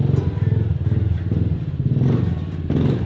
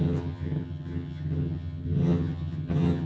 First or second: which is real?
first